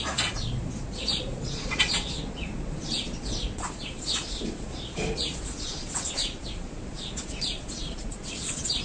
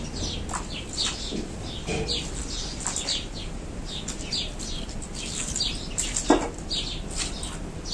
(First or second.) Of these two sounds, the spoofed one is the first